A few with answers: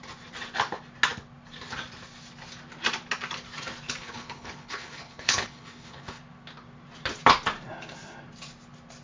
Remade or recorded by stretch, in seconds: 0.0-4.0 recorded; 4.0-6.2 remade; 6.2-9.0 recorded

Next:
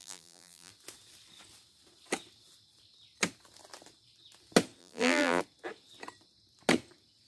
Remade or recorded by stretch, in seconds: 0.0-0.7 remade; 0.7-4.8 recorded; 4.8-5.4 remade; 5.4-7.3 recorded

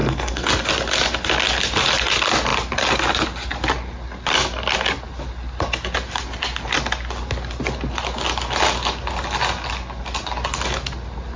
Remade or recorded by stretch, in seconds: 0.0-0.5 remade; 0.5-11.4 recorded